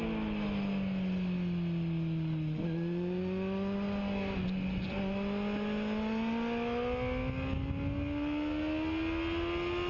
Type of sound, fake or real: real